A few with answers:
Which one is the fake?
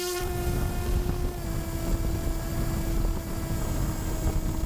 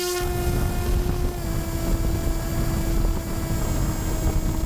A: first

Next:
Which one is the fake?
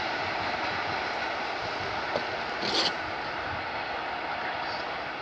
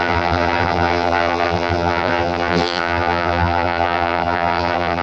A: second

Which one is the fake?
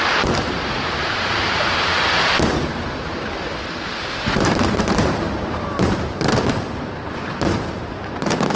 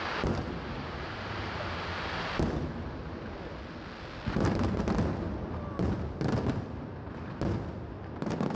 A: first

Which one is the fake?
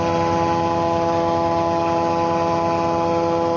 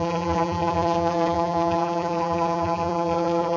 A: second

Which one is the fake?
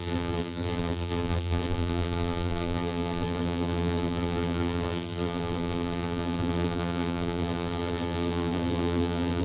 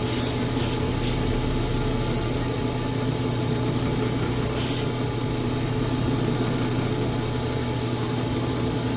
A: first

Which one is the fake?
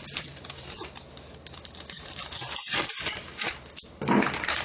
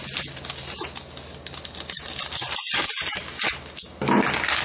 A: first